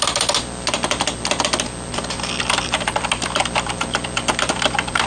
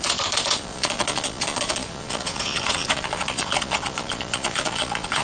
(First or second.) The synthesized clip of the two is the second